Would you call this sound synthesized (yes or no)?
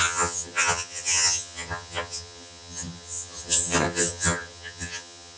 yes